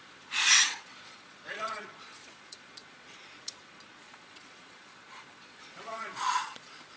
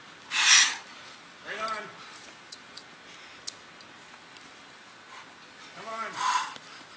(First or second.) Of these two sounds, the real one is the second